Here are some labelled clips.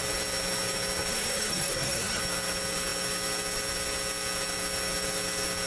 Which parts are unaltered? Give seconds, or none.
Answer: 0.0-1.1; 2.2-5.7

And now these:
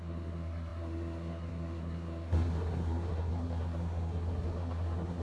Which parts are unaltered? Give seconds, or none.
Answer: none